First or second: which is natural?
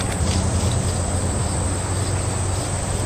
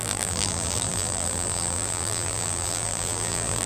first